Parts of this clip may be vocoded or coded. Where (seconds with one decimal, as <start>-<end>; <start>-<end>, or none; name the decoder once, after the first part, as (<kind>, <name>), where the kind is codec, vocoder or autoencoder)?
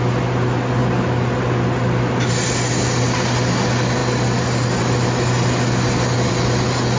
none